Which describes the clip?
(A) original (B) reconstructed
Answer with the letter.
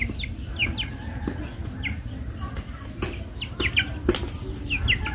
A